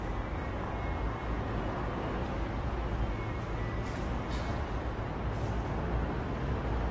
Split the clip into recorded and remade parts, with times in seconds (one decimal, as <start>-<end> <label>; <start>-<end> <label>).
0.0-6.9 recorded